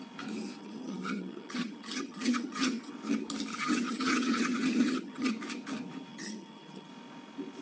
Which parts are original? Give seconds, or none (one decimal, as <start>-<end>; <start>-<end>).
0.0-0.6; 2.9-3.5; 5.3-6.1; 6.9-7.6